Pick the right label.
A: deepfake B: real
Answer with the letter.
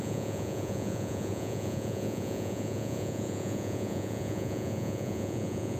A